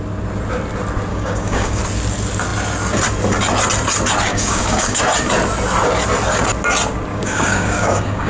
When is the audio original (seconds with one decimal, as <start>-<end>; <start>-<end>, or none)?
0.0-1.1; 1.8-4.3; 5.0-7.1